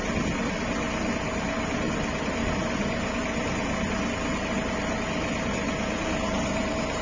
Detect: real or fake real